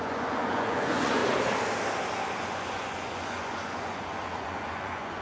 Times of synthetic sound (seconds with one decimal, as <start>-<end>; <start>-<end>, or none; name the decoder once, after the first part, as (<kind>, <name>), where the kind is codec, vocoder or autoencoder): 0.0-1.2 (vocoder, Vocos); 2.4-5.2

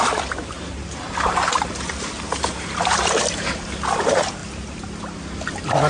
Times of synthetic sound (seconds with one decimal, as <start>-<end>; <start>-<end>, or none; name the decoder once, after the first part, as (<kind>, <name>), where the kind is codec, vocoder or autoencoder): none

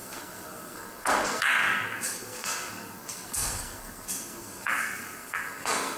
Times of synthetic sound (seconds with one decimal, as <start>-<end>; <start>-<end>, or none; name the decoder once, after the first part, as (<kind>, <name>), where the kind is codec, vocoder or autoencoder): 0.0-6.0 (codec, SNAC)

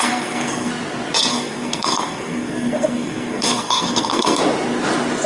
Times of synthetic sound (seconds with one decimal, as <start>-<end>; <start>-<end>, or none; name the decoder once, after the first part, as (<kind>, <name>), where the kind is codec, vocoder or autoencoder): 0.0-0.7 (codec, SNAC); 1.3-4.4

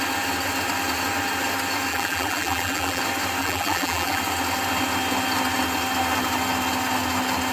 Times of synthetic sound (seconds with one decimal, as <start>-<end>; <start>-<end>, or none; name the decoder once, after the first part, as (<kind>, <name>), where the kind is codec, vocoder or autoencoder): 1.9-3.0 (vocoder, BigVGAN v2); 3.4-4.2